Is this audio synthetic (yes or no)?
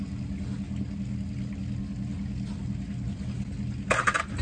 no